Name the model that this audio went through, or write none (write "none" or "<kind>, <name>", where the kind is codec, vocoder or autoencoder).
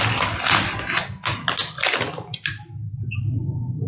none